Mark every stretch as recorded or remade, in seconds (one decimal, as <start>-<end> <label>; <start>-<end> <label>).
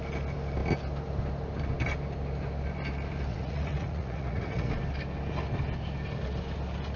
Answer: 0.0-3.3 recorded; 3.3-4.7 remade; 4.7-7.0 recorded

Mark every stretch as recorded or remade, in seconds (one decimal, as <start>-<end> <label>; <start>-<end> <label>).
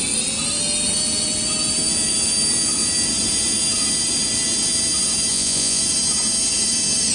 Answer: 0.0-5.3 recorded; 5.3-5.8 remade; 5.8-7.1 recorded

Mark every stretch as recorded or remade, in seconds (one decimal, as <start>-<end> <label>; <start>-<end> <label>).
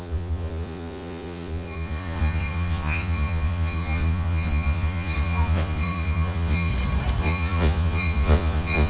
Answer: 0.0-6.7 remade; 6.7-7.2 recorded; 7.2-8.9 remade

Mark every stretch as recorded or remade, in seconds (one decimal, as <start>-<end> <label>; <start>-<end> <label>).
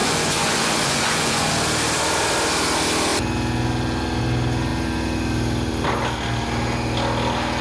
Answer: 0.0-1.5 remade; 1.5-7.6 recorded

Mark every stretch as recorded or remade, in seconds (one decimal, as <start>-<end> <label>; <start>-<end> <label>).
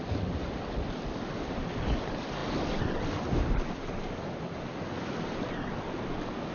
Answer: 0.0-6.5 recorded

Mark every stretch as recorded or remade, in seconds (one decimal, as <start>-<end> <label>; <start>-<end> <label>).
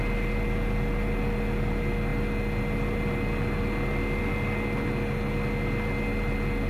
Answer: 0.0-6.7 recorded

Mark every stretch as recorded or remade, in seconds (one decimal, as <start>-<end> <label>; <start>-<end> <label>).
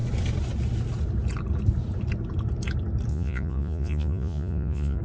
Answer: 0.0-3.1 recorded; 3.1-5.0 remade